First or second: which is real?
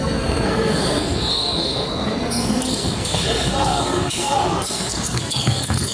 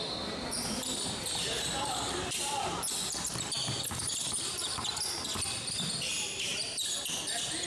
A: second